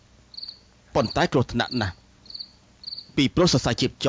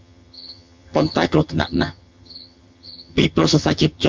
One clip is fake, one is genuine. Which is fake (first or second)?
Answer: second